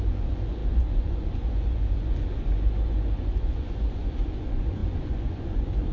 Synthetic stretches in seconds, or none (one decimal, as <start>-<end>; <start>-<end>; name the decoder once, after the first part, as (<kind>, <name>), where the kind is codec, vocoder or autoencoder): 0.0-5.9 (vocoder, Vocos)

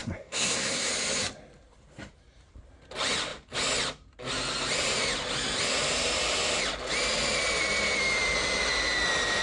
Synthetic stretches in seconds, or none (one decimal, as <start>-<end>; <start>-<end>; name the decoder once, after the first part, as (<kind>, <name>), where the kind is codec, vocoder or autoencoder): 0.0-0.9 (codec, SNAC)

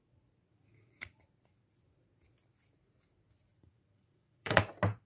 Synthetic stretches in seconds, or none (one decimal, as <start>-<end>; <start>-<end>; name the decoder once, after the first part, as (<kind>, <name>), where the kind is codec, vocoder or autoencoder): 0.5-1.2 (vocoder, Vocos); 3.5-4.6

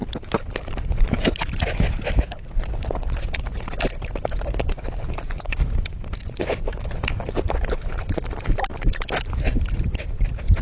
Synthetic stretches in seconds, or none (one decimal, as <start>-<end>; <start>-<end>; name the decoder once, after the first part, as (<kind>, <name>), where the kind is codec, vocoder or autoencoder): 5.1-8.7 (vocoder, BigVGAN v2); 9.7-10.6